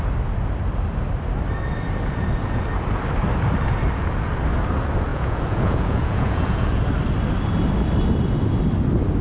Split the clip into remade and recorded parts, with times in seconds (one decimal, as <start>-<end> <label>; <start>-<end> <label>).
0.0-5.1 recorded; 5.1-6.9 remade; 6.9-9.2 recorded